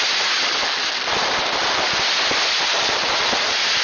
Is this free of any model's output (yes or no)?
yes